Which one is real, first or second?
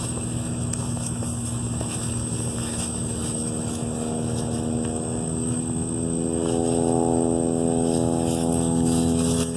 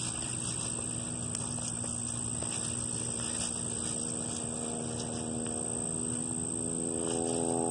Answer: second